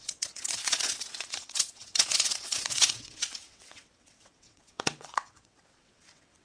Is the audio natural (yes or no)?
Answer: no